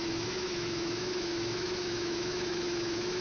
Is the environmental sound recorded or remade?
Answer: remade